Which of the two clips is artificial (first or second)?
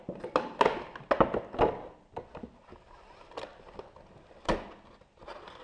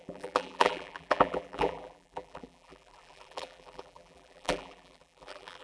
second